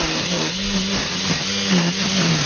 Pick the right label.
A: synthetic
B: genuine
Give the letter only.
B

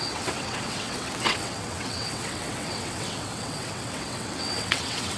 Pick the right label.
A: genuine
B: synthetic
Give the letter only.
B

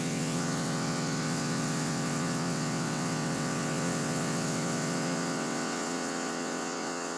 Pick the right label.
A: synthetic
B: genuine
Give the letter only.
A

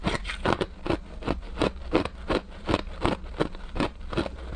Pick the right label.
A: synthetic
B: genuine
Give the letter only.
B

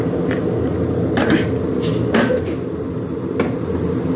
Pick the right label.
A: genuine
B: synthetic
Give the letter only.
A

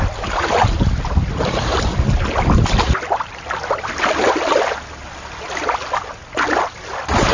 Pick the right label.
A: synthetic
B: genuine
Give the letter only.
B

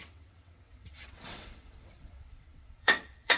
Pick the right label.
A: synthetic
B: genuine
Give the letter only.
A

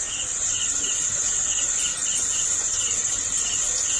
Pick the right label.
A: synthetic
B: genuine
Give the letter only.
B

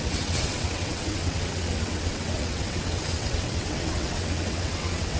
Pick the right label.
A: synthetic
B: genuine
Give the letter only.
A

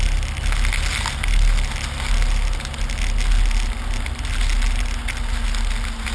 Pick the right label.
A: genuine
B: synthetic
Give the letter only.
A